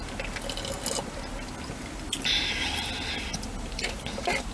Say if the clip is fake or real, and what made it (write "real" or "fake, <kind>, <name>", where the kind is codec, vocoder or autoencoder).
real